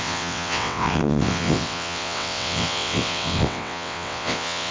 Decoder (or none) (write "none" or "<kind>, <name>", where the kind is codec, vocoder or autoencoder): vocoder, WaveNeXt